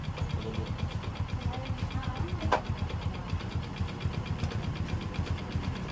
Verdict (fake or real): real